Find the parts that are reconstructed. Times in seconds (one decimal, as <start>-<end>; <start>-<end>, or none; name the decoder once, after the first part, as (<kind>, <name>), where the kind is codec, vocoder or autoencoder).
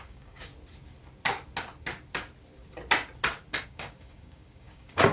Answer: 0.0-0.5 (codec, DAC); 3.6-5.1